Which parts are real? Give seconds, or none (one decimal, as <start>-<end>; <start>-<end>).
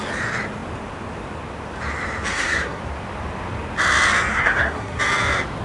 0.0-2.3; 2.8-4.3; 5.0-5.6